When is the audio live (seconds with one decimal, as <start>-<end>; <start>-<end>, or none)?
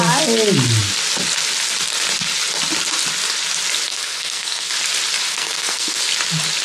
0.0-3.9; 4.7-5.3; 6.0-6.6